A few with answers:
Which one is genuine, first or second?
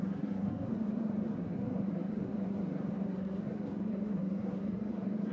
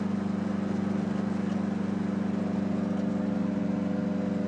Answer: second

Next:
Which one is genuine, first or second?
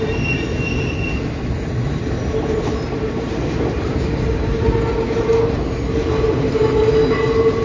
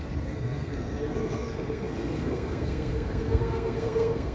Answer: first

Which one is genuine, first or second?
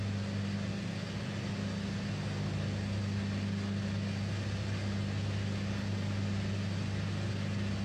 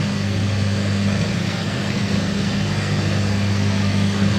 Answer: first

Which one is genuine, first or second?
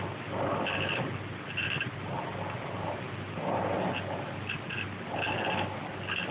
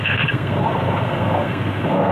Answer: first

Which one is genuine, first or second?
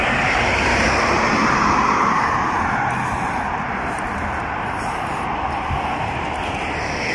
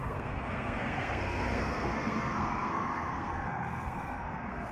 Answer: first